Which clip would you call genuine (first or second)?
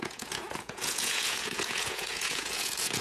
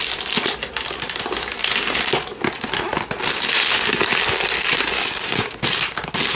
second